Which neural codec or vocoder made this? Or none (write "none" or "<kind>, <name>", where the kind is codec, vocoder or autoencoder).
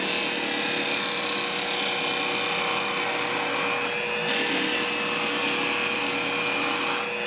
none